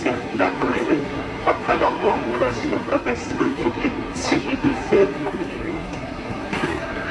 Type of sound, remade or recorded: remade